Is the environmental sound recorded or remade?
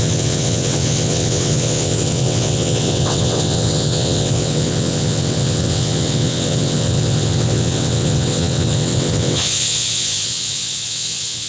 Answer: remade